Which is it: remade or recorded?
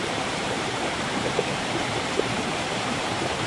remade